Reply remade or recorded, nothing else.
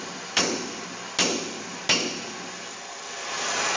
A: recorded